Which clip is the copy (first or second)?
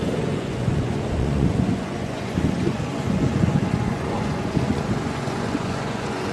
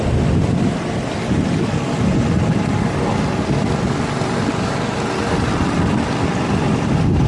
first